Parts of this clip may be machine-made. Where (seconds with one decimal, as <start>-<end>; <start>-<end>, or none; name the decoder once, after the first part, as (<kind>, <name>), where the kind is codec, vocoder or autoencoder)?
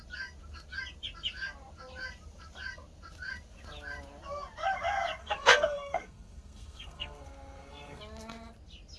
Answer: 5.2-8.0 (codec, SNAC)